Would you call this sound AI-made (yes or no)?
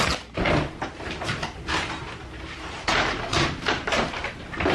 no